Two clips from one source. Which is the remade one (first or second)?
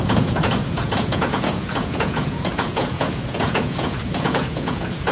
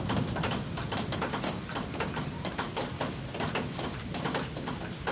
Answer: first